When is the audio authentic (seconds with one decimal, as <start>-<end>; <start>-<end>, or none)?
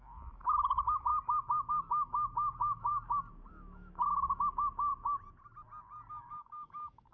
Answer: 1.1-1.7; 2.9-3.5; 4.9-6.1